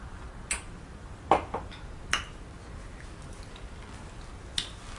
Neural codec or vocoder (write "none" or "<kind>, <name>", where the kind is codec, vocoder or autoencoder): none